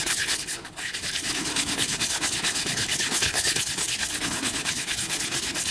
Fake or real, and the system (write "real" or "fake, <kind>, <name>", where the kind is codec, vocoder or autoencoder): fake, codec, HILCodec